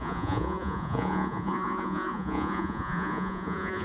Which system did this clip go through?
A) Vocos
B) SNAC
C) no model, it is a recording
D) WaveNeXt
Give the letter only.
A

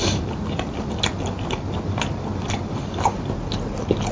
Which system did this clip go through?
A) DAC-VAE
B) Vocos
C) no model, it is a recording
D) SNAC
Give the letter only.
C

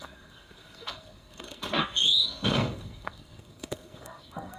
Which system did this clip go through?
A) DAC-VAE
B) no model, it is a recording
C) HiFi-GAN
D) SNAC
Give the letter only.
D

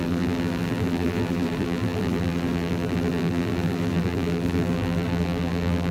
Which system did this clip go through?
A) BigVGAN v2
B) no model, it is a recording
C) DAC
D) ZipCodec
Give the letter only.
A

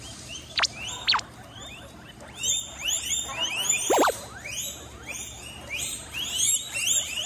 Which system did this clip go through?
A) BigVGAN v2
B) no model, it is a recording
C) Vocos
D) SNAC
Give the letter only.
A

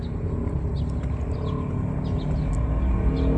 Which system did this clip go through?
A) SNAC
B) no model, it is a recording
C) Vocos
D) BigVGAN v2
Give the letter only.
B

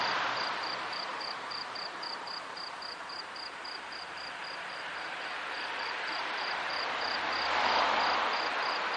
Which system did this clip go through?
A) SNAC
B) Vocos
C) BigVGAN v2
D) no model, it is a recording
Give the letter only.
C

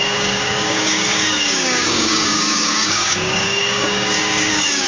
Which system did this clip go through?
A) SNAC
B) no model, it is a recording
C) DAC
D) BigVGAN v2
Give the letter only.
C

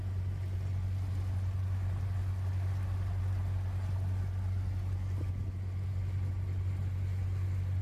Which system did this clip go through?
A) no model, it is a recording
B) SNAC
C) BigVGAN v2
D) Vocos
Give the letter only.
A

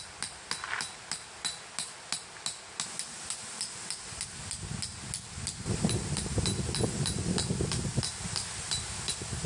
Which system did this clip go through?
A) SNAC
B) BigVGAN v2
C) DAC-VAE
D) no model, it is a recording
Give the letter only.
D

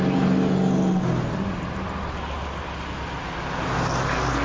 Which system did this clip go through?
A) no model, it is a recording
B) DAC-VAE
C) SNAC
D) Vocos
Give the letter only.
A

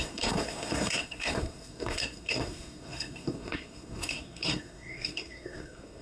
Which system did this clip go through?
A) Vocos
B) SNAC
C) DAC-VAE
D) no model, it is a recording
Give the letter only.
B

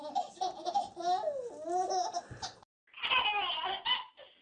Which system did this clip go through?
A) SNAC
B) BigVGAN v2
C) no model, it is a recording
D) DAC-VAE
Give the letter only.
C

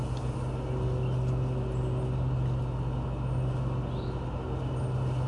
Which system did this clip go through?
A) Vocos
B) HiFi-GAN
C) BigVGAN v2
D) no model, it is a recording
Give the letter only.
D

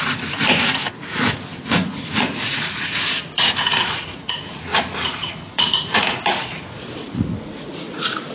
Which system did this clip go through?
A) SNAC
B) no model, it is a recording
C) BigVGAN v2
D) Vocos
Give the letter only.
D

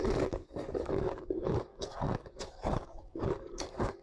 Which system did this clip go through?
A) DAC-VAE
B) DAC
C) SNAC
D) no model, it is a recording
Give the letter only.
B